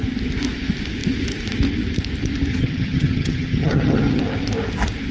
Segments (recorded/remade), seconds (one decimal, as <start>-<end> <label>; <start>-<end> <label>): 0.0-2.5 recorded; 2.5-4.2 remade; 4.2-5.1 recorded

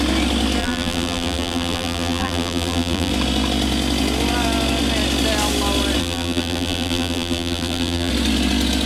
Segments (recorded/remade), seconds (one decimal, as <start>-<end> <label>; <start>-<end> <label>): 0.0-0.6 recorded; 0.6-3.1 remade; 3.1-6.0 recorded; 6.0-8.1 remade; 8.1-8.9 recorded

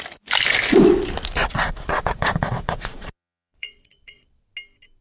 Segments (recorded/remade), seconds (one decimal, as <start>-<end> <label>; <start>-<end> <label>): 0.0-1.4 recorded; 1.4-4.4 remade; 4.4-5.0 recorded

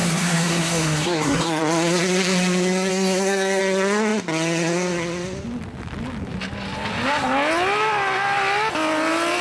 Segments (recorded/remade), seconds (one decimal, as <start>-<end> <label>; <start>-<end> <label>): 0.0-1.6 remade; 1.6-2.9 recorded; 2.9-3.6 remade; 3.6-9.4 recorded

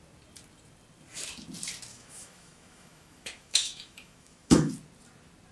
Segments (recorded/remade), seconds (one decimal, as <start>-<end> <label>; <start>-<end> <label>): 0.0-1.9 recorded; 1.9-4.7 remade; 4.7-5.5 recorded

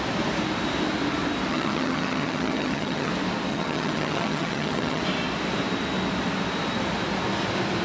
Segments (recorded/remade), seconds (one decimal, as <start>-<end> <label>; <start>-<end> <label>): 0.0-1.5 recorded; 1.5-3.1 remade; 3.1-3.5 recorded; 3.5-5.0 remade; 5.0-7.8 recorded